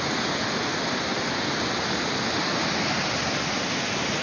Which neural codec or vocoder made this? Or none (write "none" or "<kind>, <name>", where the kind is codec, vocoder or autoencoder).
none